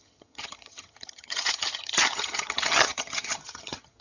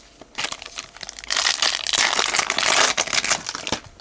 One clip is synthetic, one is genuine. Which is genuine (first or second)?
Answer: second